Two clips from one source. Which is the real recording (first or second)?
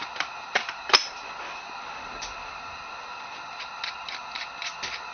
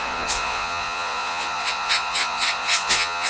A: first